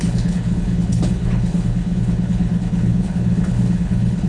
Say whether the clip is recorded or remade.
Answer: remade